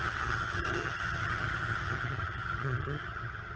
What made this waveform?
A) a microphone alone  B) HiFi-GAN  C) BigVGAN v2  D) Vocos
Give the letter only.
B